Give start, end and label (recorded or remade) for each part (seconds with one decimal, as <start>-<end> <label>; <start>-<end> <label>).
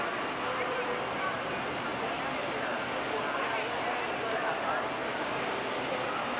0.0-5.0 recorded; 5.0-5.7 remade; 5.7-6.4 recorded